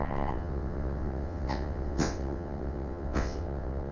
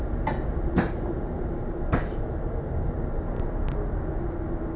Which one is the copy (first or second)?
first